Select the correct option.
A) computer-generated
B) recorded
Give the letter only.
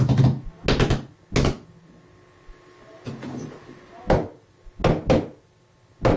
B